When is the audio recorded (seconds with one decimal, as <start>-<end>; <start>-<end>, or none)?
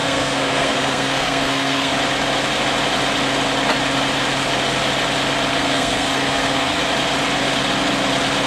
1.9-5.5; 6.8-8.5